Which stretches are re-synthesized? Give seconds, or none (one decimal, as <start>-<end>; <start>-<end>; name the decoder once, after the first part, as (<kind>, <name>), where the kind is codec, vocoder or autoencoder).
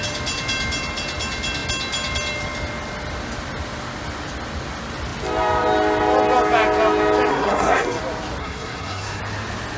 7.3-8.0 (codec, SNAC); 8.4-9.2